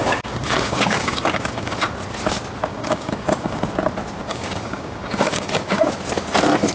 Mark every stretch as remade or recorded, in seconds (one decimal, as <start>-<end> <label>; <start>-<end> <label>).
0.0-1.9 remade; 1.9-2.7 recorded; 2.7-3.6 remade; 3.6-4.2 recorded; 4.2-5.9 remade; 5.9-6.7 recorded